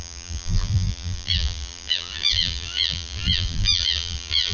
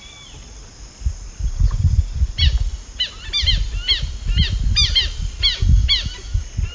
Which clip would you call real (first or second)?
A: second